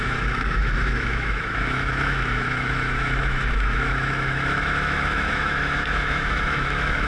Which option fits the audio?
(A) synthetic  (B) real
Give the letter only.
A